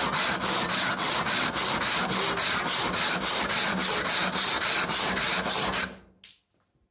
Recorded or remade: recorded